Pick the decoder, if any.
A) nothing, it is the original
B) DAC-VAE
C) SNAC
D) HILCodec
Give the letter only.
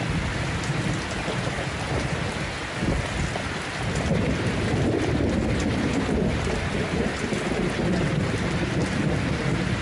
A